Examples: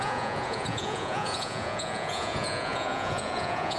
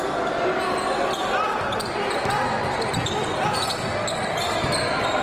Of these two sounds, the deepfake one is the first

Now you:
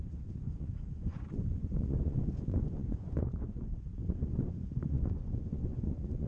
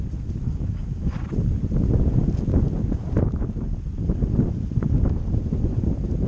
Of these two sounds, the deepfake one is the first